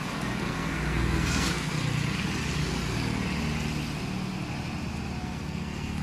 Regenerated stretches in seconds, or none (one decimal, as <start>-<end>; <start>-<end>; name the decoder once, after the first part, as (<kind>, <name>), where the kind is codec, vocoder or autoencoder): 0.0-1.7 (codec, SNAC); 5.2-6.0